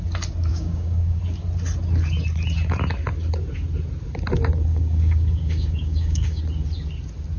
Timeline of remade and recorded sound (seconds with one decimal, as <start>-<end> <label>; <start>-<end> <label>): 0.0-0.5 recorded; 0.5-1.2 remade; 1.2-4.7 recorded; 4.7-6.4 remade; 6.4-7.4 recorded